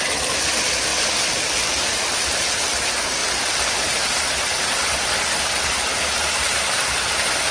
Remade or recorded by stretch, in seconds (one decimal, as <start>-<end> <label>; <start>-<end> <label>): 0.0-7.5 recorded